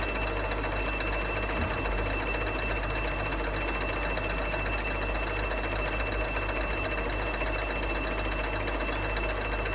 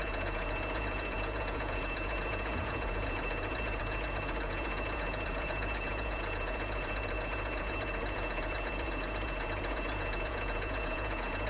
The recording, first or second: first